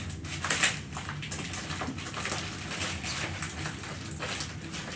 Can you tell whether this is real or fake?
real